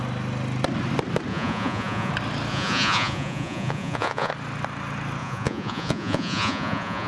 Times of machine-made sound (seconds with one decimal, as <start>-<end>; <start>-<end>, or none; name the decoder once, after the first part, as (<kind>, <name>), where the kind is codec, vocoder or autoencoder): 1.3-2.1 (vocoder, Vocos); 2.5-4.3; 5.2-7.1